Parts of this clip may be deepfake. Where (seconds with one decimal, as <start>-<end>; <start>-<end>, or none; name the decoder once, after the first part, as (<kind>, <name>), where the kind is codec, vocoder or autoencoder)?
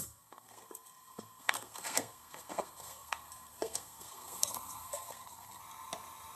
0.0-5.6 (codec, SNAC)